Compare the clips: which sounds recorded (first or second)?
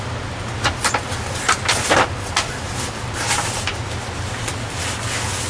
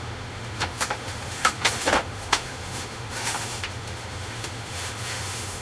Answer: first